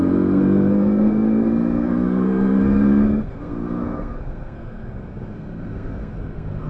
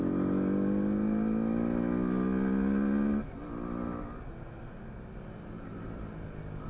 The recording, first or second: second